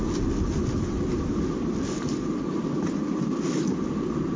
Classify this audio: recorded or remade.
recorded